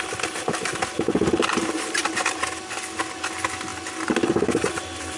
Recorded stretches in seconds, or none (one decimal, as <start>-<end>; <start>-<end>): 0.0-2.0; 2.6-5.2